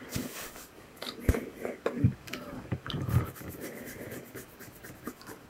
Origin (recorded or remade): remade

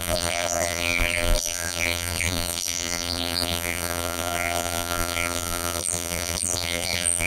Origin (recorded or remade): remade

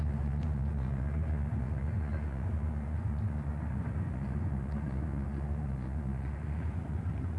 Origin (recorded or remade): remade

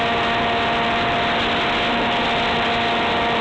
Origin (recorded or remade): recorded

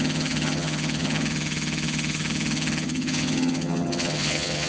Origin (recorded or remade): remade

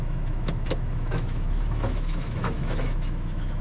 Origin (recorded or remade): remade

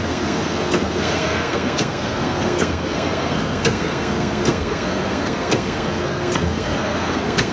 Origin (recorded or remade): remade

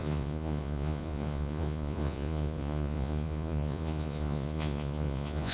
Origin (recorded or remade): remade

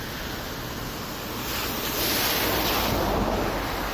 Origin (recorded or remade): recorded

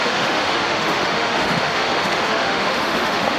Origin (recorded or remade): remade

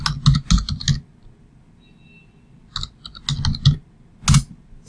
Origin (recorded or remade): recorded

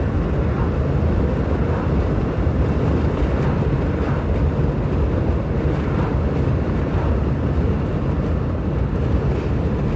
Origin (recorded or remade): recorded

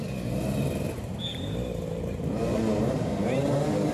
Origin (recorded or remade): recorded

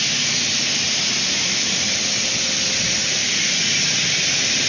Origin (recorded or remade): recorded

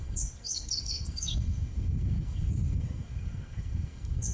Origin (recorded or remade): remade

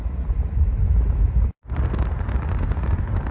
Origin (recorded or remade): recorded